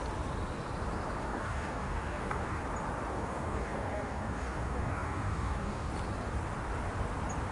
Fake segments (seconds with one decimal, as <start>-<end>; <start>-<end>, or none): 1.2-2.6; 3.1-5.9